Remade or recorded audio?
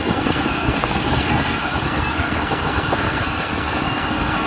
remade